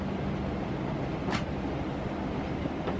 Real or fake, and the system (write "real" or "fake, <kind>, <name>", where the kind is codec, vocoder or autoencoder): real